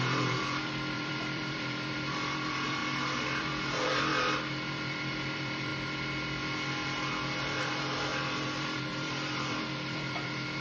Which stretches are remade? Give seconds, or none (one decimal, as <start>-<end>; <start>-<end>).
0.0-2.8; 3.4-4.1; 4.7-5.7; 7.6-10.6